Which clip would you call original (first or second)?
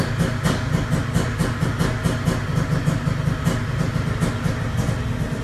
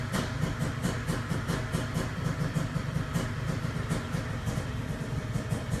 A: first